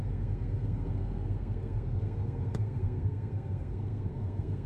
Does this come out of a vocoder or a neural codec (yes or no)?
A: yes